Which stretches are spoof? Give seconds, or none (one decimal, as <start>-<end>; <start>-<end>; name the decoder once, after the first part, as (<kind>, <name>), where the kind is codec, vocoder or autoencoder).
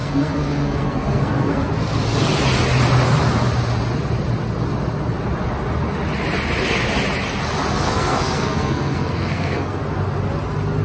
0.0-1.7 (codec, SNAC); 7.7-9.8